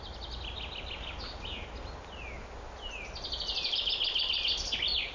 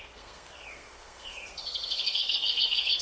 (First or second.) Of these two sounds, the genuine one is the first